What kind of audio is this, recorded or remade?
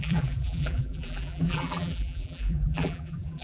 remade